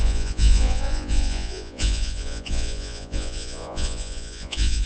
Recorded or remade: remade